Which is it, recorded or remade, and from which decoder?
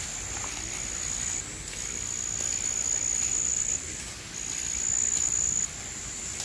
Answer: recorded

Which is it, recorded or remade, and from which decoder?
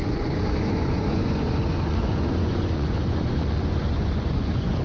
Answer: remade, vocoder, Vocos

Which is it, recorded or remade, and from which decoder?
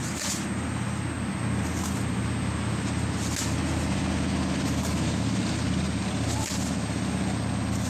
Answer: recorded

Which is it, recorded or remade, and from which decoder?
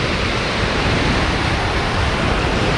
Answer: remade, vocoder, BigVGAN v2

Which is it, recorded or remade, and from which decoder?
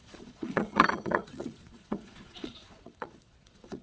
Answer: remade, vocoder, Vocos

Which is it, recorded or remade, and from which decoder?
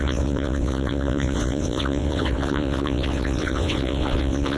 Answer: remade, vocoder, WaveNeXt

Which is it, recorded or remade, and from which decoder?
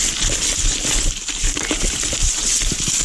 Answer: remade, vocoder, BigVGAN v2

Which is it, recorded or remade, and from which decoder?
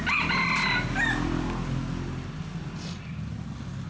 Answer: recorded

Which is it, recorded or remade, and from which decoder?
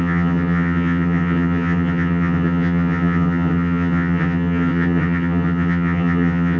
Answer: remade, vocoder, HiFi-GAN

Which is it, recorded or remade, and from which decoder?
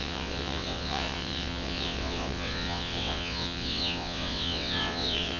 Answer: remade, vocoder, WaveNeXt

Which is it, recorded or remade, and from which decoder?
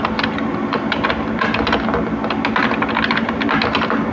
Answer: recorded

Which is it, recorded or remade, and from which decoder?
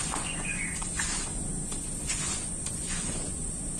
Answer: remade, vocoder, Vocos